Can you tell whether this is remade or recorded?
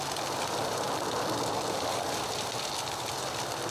remade